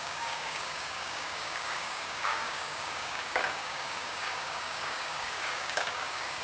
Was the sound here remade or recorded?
remade